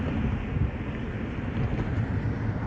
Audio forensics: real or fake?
real